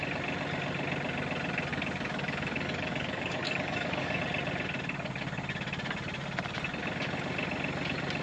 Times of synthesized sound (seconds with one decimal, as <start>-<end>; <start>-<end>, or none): 1.7-4.2